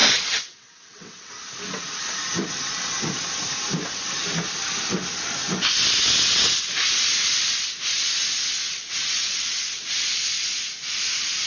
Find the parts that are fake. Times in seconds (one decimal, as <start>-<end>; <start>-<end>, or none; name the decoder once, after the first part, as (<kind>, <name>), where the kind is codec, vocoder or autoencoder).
0.0-1.3 (vocoder, WaveNeXt); 8.6-9.9